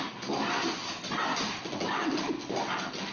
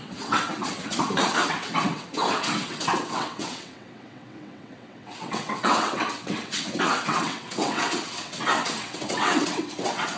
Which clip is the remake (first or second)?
second